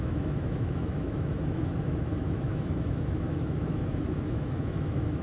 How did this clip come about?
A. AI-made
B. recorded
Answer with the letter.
A